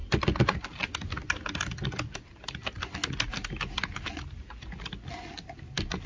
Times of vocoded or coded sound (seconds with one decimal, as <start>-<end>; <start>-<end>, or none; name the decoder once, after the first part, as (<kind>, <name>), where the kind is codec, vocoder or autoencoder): none